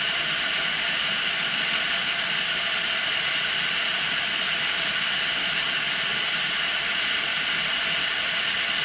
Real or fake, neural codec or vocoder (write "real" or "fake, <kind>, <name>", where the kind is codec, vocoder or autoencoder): real